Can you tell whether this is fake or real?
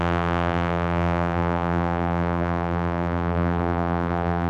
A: fake